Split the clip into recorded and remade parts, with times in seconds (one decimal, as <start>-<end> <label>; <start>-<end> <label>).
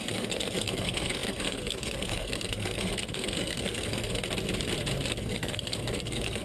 0.0-4.2 remade; 4.2-5.2 recorded; 5.2-6.4 remade